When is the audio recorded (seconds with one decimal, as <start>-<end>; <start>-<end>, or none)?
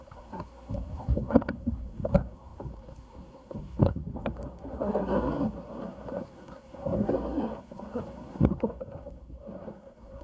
none